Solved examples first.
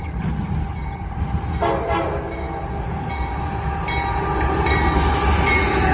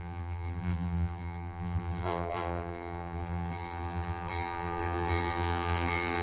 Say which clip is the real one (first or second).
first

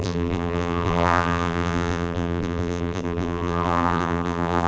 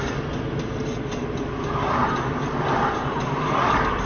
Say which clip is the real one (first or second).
second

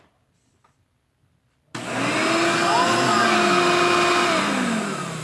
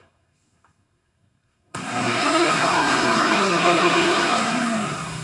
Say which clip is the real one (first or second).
first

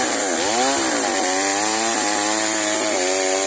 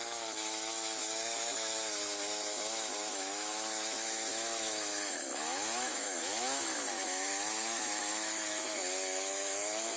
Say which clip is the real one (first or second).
first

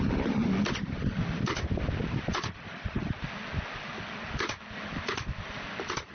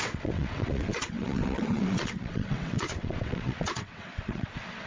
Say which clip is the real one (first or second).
first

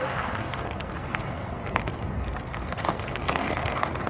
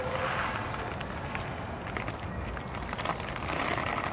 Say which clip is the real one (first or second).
second